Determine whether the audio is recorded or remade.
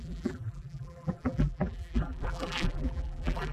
remade